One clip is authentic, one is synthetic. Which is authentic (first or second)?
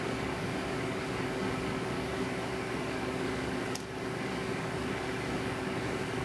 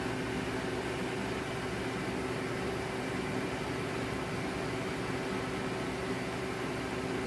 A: second